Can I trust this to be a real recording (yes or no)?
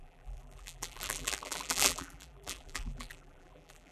no